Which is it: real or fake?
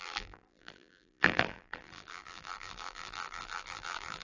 fake